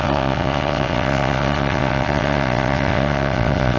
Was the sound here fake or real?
fake